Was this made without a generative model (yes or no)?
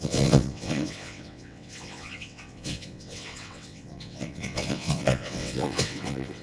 no